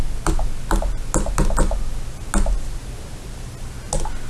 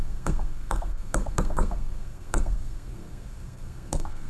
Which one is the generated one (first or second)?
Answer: second